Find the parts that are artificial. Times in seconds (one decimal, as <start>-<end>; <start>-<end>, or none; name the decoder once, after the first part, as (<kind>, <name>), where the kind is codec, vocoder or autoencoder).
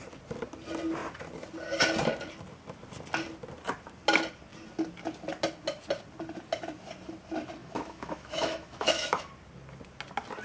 7.6-9.3 (autoencoder, DAC-VAE)